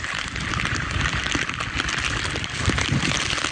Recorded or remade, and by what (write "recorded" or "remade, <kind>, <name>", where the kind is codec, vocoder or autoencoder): recorded